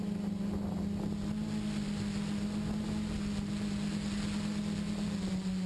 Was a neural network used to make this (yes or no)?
no